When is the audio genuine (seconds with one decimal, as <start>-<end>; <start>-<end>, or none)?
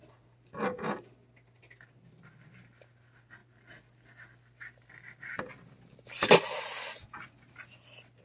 0.0-8.2